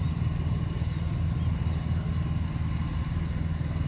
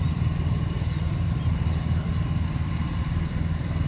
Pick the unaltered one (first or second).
first